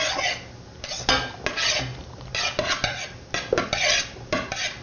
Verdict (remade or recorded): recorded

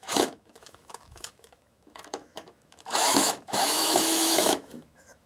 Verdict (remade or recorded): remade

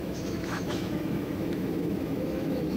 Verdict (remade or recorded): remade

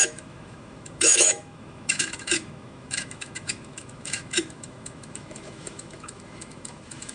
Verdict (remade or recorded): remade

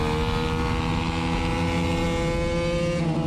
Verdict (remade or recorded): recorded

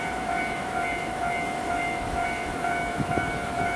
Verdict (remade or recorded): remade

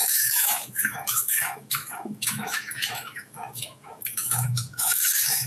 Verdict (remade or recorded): remade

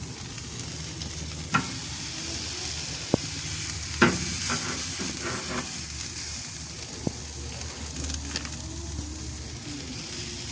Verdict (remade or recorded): recorded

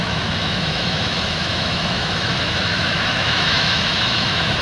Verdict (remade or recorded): remade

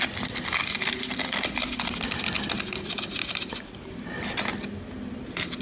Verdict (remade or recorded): recorded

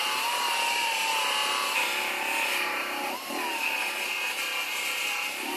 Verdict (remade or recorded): recorded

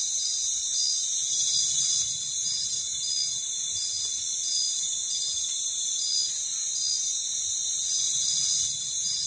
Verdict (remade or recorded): recorded